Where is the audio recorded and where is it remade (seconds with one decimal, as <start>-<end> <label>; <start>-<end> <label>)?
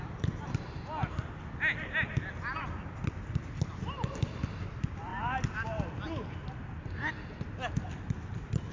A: 0.0-8.7 recorded